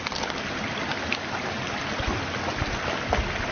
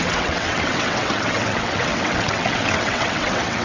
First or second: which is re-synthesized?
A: second